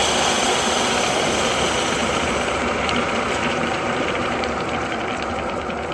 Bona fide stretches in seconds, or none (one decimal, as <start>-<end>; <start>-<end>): 0.0-2.0; 4.7-5.9